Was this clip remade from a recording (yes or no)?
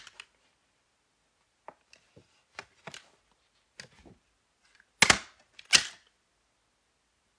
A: no